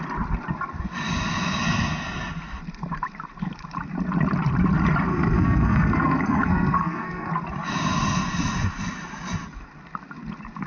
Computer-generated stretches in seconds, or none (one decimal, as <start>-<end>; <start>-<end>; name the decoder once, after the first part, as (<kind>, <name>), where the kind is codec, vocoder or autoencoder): 5.1-7.3 (codec, SNAC)